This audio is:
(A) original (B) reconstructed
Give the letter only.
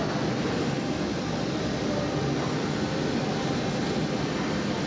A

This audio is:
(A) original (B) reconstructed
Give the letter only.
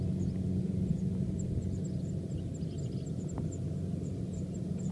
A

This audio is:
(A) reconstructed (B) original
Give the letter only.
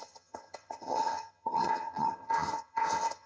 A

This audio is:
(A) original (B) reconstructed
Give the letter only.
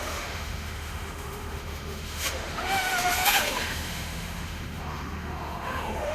B